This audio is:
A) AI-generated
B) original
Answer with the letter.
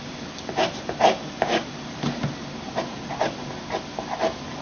B